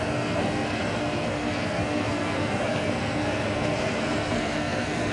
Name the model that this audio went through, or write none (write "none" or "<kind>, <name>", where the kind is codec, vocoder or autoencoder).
codec, SNAC